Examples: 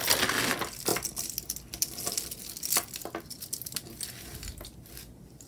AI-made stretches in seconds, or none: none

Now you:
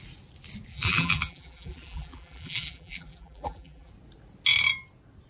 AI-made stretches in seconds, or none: 0.7-3.9 (vocoder, BigVGAN v2)